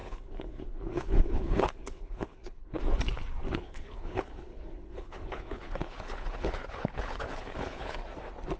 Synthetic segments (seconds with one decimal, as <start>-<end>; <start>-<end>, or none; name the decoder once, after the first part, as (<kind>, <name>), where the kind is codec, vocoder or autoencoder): 0.0-2.8 (codec, HILCodec); 3.5-8.0